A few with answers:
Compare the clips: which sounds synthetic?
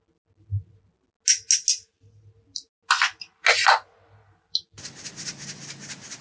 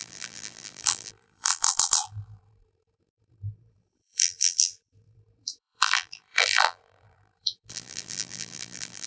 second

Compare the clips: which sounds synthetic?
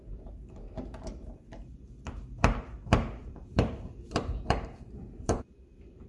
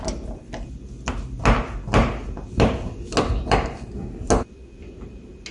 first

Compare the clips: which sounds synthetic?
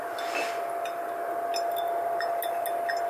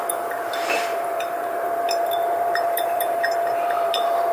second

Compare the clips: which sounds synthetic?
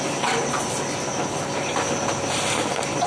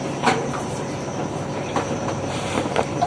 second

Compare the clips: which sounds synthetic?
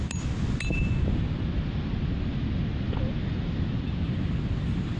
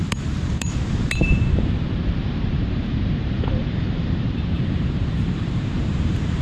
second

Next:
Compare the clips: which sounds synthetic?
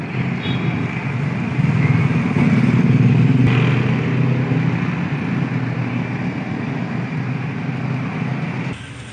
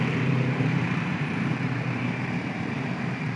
second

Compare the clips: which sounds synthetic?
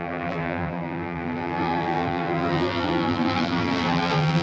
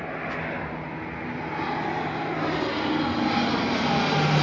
first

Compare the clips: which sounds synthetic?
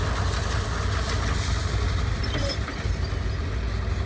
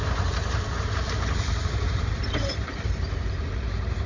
second